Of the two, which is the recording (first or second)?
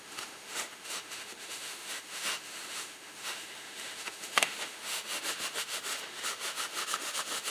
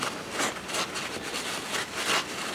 second